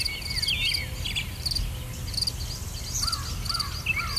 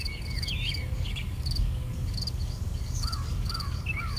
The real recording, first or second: first